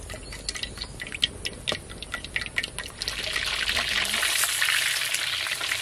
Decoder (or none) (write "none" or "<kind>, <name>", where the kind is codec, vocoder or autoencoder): none